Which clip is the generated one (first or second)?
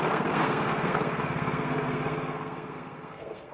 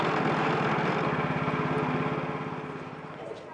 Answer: first